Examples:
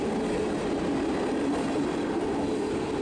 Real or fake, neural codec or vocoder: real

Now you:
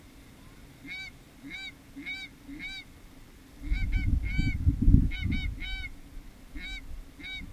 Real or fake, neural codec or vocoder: real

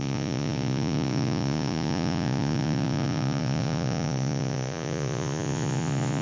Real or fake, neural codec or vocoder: fake, vocoder, Vocos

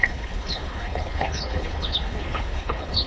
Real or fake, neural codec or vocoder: fake, codec, HILCodec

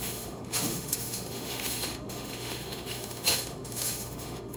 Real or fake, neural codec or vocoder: fake, autoencoder, DAC-VAE